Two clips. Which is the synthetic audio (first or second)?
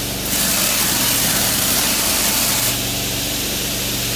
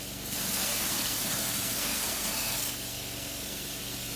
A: second